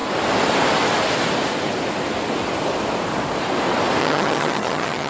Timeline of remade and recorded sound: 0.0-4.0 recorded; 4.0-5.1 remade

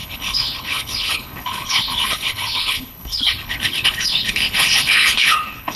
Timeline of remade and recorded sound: 0.0-5.8 remade

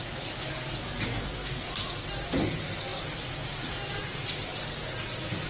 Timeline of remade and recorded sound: 0.0-1.1 recorded; 1.1-1.7 remade; 1.7-5.5 recorded

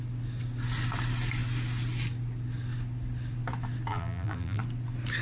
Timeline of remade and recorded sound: 0.0-3.9 recorded; 3.9-4.6 remade; 4.6-5.2 recorded

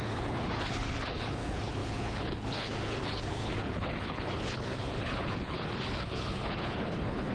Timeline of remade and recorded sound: 0.0-7.3 remade

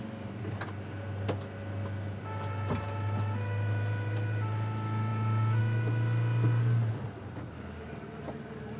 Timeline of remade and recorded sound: 0.0-8.8 recorded